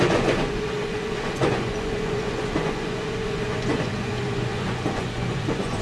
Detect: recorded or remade remade